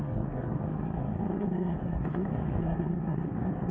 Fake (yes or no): yes